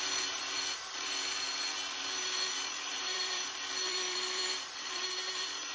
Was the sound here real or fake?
fake